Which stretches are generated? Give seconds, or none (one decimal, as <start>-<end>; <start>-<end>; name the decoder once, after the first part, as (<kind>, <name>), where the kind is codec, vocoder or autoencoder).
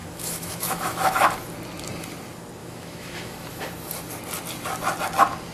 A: 0.0-1.3 (autoencoder, DAC-VAE); 2.6-3.6